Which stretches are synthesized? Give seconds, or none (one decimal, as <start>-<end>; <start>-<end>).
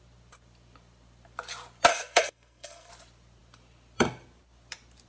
1.9-2.9